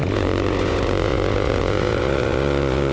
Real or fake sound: fake